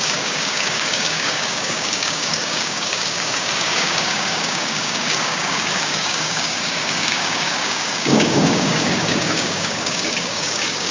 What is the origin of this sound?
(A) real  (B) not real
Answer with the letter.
B